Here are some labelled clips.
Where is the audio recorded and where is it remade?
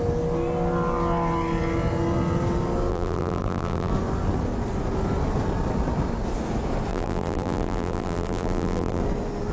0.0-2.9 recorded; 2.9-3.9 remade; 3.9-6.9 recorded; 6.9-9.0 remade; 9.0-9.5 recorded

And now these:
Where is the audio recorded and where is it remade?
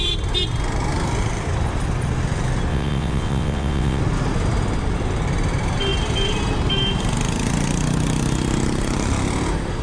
0.0-2.7 recorded; 2.7-4.0 remade; 4.0-9.8 recorded